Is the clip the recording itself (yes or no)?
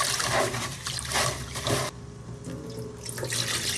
yes